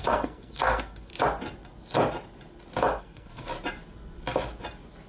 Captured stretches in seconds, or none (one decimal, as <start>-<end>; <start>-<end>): 1.1-3.0; 3.5-5.1